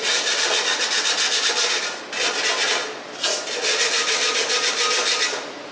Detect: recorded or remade recorded